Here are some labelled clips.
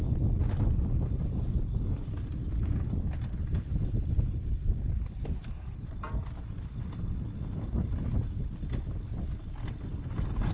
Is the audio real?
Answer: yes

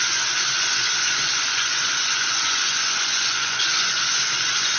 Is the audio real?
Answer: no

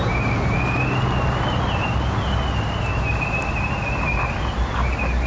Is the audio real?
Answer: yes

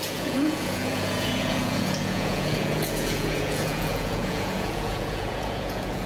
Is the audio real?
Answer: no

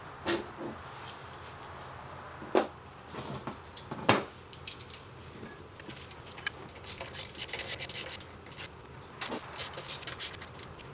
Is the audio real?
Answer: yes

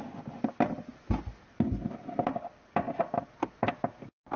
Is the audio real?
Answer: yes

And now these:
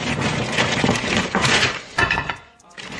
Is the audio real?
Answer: no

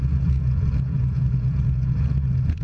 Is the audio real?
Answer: no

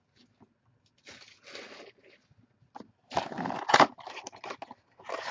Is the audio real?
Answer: yes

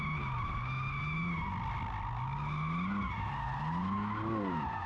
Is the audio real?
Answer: yes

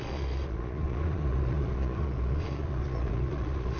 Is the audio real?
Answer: no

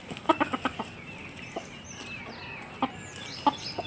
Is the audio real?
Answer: yes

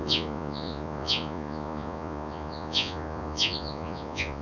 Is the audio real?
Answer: no